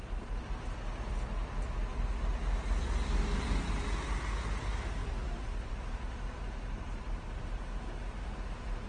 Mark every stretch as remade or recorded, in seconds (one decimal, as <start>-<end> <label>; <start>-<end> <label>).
0.0-8.9 recorded